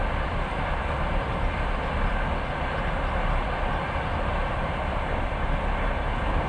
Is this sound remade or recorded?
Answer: remade